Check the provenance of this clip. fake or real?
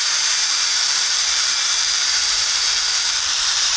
fake